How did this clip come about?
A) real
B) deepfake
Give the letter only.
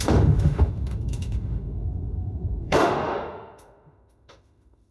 B